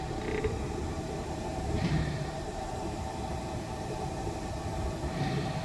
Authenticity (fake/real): fake